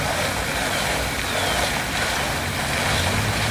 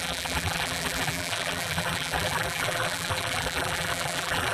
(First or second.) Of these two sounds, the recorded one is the first